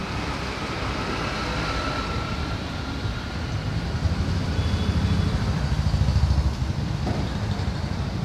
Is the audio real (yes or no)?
no